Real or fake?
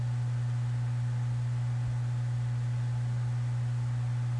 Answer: real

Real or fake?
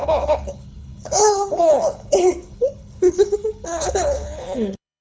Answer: fake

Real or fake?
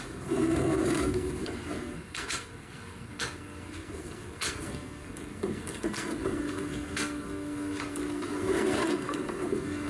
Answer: fake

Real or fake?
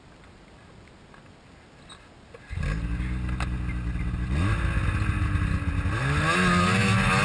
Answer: real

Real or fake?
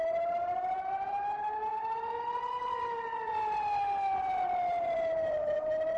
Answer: fake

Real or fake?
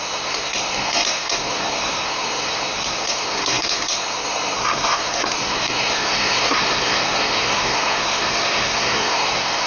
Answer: fake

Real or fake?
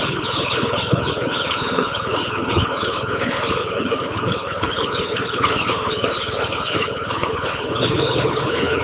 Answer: fake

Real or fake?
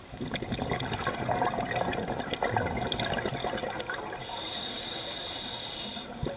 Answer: real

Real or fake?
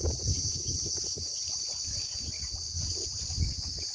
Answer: real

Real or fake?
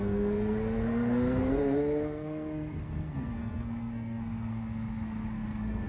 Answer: fake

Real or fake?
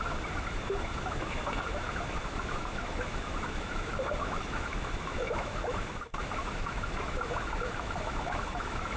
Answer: fake